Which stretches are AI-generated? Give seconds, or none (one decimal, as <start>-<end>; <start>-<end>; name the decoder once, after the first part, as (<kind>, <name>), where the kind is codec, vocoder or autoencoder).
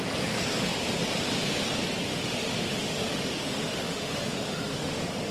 2.1-5.3 (autoencoder, DAC-VAE)